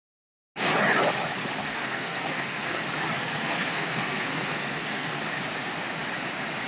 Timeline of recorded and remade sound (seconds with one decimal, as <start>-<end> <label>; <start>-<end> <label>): 0.0-1.6 recorded; 1.6-2.8 remade; 2.8-3.2 recorded; 3.2-5.2 remade; 5.2-6.7 recorded